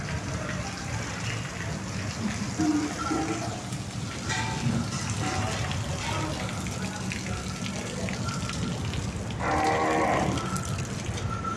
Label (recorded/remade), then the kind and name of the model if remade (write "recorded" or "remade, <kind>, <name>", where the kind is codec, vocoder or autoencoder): recorded